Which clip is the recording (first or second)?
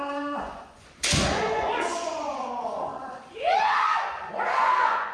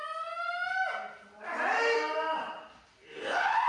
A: second